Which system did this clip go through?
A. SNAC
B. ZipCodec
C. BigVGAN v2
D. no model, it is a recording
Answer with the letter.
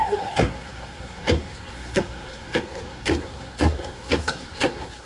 A